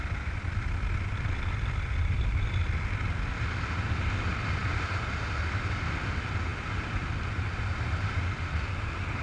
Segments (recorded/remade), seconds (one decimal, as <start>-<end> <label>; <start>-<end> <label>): 0.0-9.2 recorded